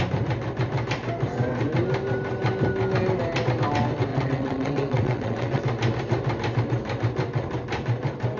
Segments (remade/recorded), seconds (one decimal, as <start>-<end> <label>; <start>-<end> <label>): 0.0-4.1 recorded; 4.1-5.6 remade; 5.6-8.4 recorded